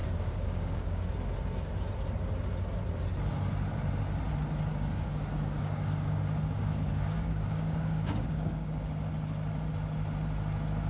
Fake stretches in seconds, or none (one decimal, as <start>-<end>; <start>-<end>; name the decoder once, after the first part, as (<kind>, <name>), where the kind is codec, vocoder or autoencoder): 0.0-1.1 (codec, DAC); 4.7-8.9